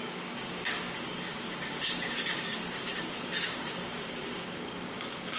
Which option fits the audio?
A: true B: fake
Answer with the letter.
B